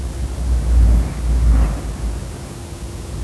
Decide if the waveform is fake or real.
real